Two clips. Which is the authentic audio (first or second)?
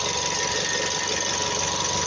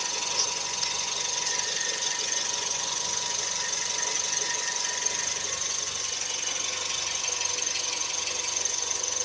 first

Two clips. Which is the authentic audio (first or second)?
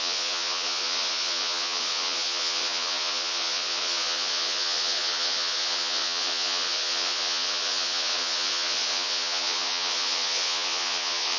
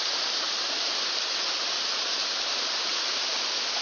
second